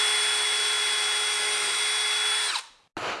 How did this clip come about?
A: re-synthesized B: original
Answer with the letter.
B